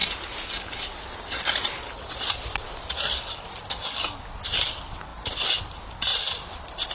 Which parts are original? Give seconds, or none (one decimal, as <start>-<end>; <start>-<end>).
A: 0.0-6.9

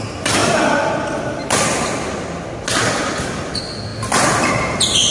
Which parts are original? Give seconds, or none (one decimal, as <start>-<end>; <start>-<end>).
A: 0.0-5.1

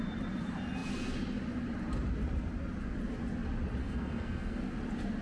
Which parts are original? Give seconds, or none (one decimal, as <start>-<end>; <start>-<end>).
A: 0.0-3.8; 4.6-5.2